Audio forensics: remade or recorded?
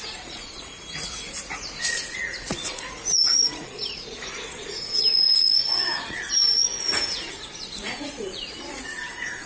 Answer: remade